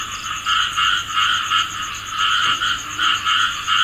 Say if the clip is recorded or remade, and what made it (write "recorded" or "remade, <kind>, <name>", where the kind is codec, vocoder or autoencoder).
recorded